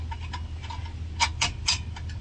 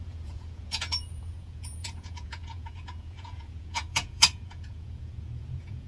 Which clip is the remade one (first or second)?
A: second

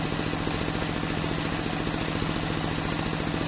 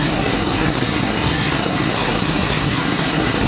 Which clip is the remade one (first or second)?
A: second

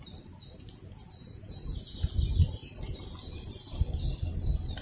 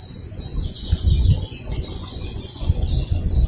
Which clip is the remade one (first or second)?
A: second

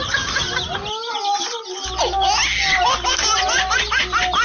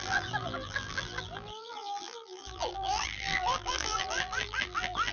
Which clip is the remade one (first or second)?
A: second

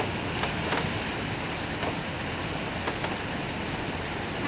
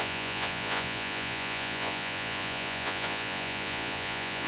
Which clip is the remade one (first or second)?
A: second